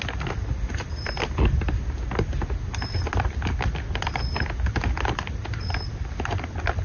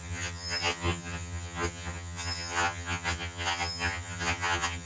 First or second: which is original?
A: first